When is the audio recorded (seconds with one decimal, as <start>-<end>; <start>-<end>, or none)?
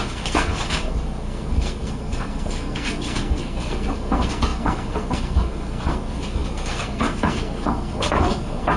none